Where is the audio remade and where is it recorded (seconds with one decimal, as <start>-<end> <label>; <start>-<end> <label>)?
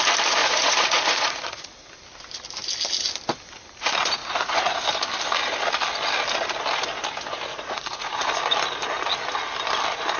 0.0-0.4 recorded; 0.4-1.9 remade; 1.9-4.2 recorded; 4.2-4.8 remade; 4.8-7.5 recorded; 7.5-8.3 remade; 8.3-10.2 recorded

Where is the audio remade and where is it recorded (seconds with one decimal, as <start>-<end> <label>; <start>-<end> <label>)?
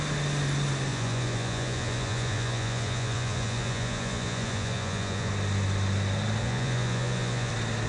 0.0-0.9 recorded; 0.9-5.3 remade; 5.3-6.4 recorded; 6.4-7.5 remade; 7.5-7.9 recorded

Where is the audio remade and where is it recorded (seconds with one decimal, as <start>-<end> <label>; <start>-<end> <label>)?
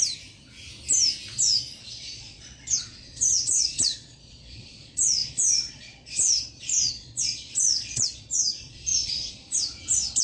0.0-1.8 recorded; 1.8-10.2 remade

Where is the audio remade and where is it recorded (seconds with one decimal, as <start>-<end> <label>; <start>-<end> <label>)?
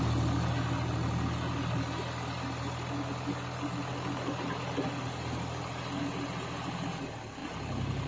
0.0-8.1 recorded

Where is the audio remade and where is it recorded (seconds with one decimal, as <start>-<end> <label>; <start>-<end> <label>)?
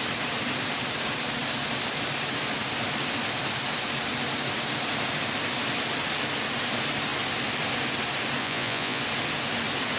0.0-8.4 recorded; 8.4-9.0 remade; 9.0-10.0 recorded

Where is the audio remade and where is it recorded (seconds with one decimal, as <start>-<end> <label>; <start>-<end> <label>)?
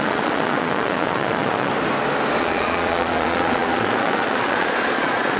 0.0-1.7 remade; 1.7-2.4 recorded; 2.4-5.4 remade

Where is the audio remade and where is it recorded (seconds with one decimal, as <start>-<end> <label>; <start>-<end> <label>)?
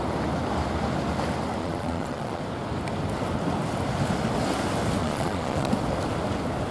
0.0-1.6 recorded; 1.6-2.4 remade; 2.4-5.0 recorded; 5.0-5.7 remade; 5.7-6.7 recorded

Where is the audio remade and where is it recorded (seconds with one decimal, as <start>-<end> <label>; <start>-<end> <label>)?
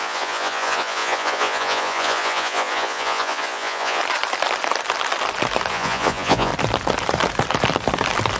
0.0-4.0 remade; 4.0-5.7 recorded; 5.7-6.5 remade; 6.5-8.4 recorded